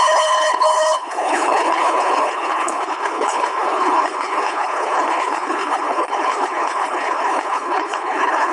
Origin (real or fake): fake